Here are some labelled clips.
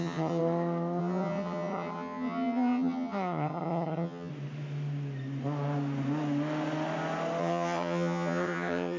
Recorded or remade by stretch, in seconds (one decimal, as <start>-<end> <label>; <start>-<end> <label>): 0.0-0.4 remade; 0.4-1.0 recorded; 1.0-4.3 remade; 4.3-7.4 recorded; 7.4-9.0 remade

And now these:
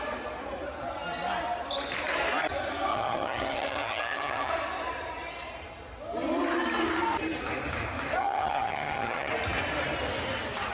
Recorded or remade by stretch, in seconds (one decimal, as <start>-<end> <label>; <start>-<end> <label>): 0.0-2.9 recorded; 2.9-4.5 remade; 4.5-8.2 recorded; 8.2-9.3 remade; 9.3-10.7 recorded

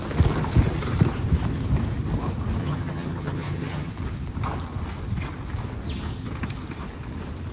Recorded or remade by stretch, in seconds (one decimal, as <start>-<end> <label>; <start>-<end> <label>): 0.0-2.6 recorded; 2.6-3.9 remade; 3.9-7.5 recorded

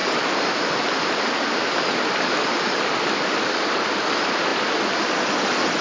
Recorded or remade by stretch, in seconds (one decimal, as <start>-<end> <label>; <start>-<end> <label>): 0.0-5.8 recorded

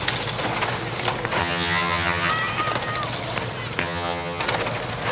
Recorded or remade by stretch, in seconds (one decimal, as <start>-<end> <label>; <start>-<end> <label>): 0.0-1.4 recorded; 1.4-2.3 remade; 2.3-3.8 recorded; 3.8-4.4 remade; 4.4-5.1 recorded

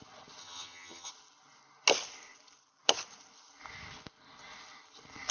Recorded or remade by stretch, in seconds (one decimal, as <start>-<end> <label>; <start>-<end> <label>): 0.0-0.4 recorded; 0.4-1.1 remade; 1.1-5.3 recorded

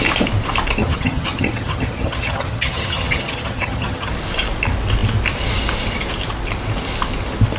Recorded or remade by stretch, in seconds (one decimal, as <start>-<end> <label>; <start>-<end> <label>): 0.0-0.8 recorded; 0.8-4.1 remade; 4.1-7.6 recorded

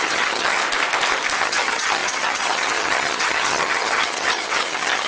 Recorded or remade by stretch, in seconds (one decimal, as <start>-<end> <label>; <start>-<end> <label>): 0.0-0.6 remade; 0.6-1.4 recorded; 1.4-5.1 remade